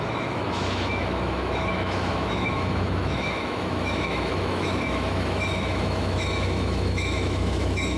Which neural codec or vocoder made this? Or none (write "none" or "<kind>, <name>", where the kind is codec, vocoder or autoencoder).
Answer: autoencoder, DAC-VAE